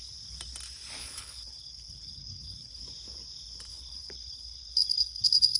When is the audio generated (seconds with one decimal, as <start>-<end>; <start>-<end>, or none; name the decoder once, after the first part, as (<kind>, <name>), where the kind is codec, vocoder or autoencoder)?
1.0-2.8 (codec, HILCodec); 3.7-5.6